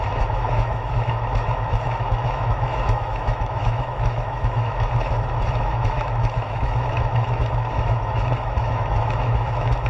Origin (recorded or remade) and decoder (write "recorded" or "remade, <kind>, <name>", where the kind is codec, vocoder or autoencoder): remade, autoencoder, DAC-VAE